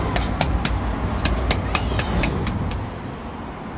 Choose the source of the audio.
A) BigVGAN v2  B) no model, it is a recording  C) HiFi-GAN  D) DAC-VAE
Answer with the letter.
B